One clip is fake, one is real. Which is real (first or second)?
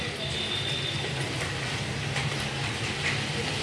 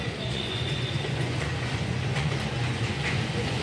first